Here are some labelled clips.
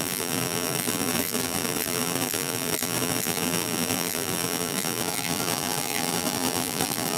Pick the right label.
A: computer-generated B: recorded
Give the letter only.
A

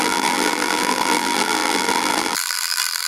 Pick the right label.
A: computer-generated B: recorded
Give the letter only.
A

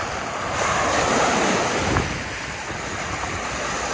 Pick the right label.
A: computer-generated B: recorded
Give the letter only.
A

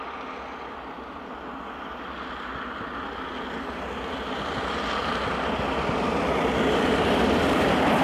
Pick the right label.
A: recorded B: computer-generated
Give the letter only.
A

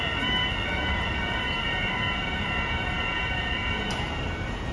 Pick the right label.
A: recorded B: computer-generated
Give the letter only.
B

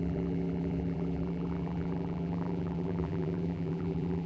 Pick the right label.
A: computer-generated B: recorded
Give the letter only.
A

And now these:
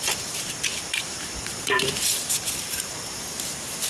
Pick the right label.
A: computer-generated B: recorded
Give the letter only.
A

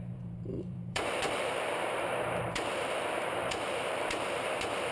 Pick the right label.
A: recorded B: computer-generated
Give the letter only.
B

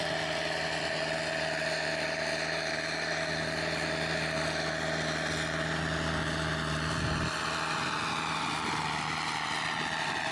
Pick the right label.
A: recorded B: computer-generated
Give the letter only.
A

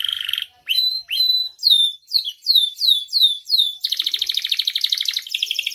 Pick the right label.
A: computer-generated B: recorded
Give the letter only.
A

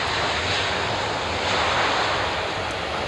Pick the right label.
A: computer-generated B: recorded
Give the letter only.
B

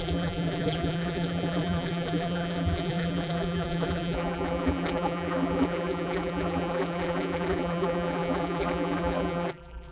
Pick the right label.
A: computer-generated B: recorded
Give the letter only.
A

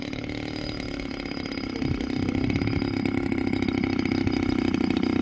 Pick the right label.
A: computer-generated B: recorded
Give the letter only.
B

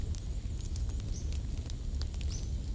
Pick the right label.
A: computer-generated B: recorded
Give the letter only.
B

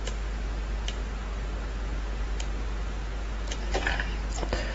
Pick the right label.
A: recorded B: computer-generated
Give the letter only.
A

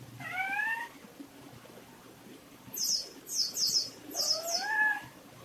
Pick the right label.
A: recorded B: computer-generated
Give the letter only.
B